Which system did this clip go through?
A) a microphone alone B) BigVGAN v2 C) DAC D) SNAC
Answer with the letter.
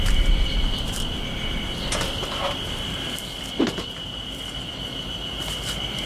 B